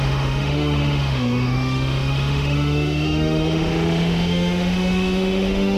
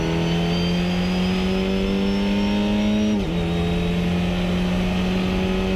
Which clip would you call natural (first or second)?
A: second